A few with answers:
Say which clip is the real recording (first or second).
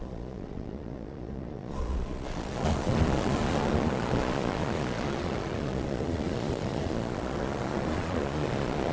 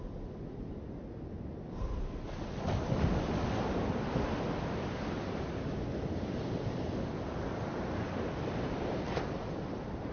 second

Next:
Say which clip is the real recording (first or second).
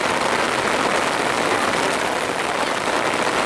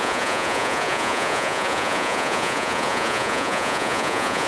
first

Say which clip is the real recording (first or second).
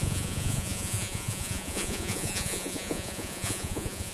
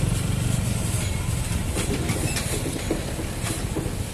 second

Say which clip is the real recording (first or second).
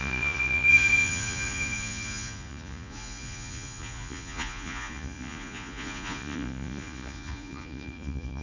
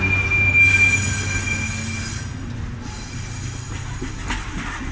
second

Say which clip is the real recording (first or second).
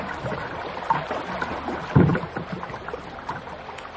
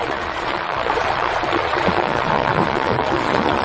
first